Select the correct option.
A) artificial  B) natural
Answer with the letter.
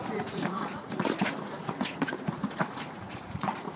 A